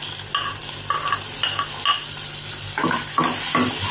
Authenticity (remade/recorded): recorded